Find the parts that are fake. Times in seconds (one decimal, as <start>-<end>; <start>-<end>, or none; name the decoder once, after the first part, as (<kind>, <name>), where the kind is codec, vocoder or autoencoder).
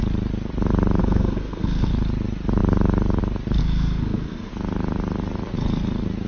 1.0-1.9 (codec, SNAC); 3.6-4.5